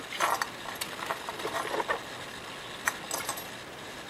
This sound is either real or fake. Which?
real